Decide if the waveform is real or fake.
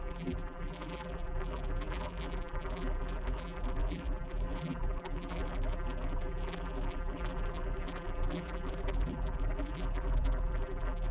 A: fake